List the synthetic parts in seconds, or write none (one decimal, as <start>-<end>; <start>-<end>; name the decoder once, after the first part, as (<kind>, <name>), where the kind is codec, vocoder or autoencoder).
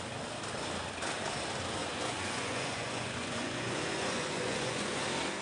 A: 1.8-5.0 (vocoder, Vocos)